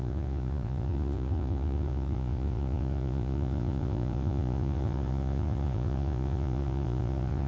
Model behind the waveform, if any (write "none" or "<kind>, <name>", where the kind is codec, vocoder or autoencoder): vocoder, Vocos